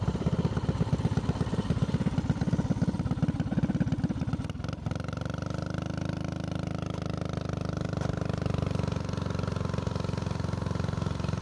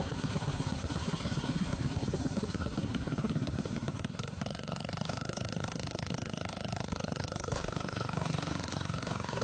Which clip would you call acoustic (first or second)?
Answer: first